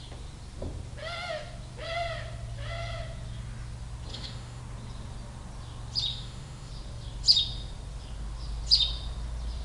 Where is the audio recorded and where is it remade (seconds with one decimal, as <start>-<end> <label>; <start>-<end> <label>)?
0.0-4.1 recorded; 4.1-4.6 remade; 4.6-6.1 recorded; 6.1-6.7 remade; 6.7-9.6 recorded

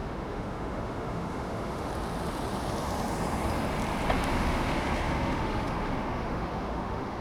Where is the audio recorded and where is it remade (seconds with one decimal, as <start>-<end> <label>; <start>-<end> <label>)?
0.0-1.9 remade; 1.9-4.3 recorded; 4.3-7.2 remade

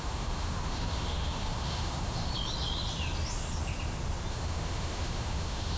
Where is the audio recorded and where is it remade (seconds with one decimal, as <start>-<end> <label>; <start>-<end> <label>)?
0.0-2.3 remade; 2.3-4.3 recorded; 4.3-5.8 remade